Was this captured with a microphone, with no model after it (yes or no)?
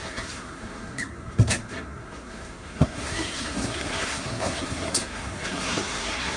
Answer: no